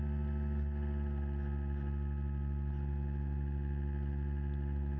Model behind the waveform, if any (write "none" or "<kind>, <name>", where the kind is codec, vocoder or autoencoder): none